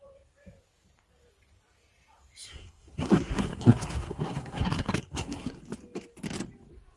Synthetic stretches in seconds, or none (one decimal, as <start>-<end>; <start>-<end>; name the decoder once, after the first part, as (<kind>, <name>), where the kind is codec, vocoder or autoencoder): 2.5-5.6 (codec, SNAC)